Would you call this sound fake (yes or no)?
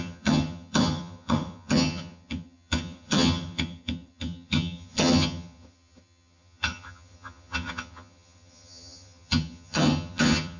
yes